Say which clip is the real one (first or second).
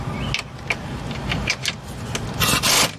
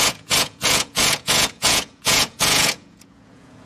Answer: first